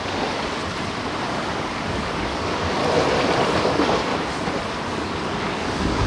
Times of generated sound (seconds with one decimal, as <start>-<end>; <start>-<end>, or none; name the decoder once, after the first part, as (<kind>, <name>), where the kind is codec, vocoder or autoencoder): 0.0-0.6 (codec, DAC); 1.3-2.8; 3.4-4.1; 4.9-6.1